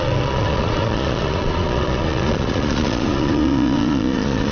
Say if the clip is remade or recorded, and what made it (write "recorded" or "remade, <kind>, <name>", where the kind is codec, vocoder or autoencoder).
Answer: remade, vocoder, Vocos